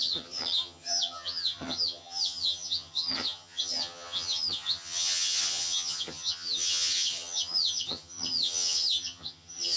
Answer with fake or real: fake